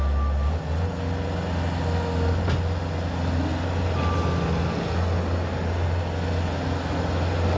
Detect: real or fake real